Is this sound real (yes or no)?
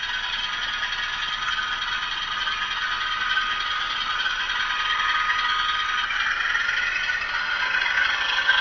yes